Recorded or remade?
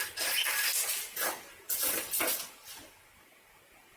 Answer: recorded